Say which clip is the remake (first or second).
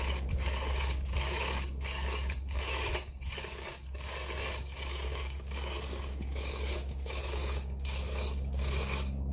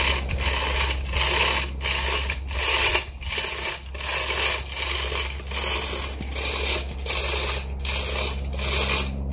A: first